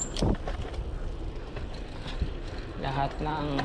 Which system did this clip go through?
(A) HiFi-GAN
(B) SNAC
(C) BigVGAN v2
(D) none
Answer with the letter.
D